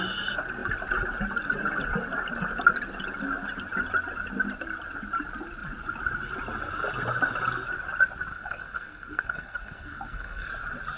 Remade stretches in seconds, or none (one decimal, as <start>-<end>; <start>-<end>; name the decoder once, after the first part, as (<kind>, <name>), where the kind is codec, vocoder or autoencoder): 8.3-10.5 (codec, SNAC)